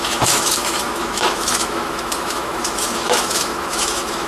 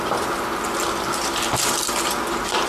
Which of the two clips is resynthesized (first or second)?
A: first